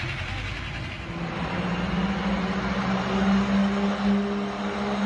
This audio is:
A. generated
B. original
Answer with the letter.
B